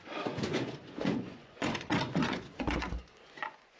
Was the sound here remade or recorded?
remade